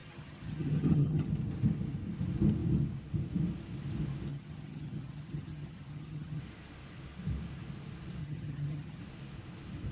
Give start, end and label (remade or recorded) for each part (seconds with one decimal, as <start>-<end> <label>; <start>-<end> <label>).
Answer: 0.0-1.3 remade; 1.3-4.3 recorded; 4.3-6.4 remade; 6.4-8.2 recorded; 8.2-9.0 remade; 9.0-9.9 recorded